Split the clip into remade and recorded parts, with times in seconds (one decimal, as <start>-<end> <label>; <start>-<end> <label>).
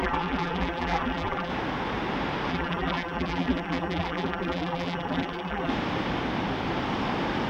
0.0-1.5 remade; 1.5-2.5 recorded; 2.5-5.7 remade; 5.7-7.5 recorded